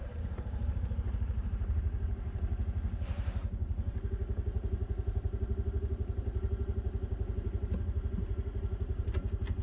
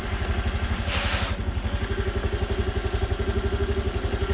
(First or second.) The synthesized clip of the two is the first